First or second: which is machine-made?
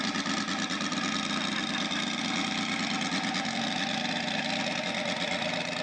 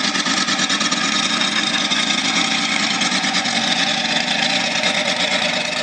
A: second